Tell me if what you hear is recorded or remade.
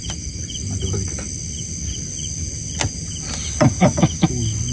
recorded